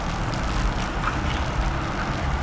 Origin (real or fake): real